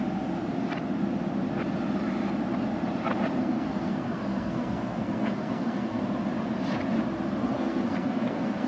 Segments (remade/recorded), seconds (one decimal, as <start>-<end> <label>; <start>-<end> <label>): 0.0-3.4 recorded; 3.4-6.0 remade; 6.0-7.4 recorded; 7.4-8.7 remade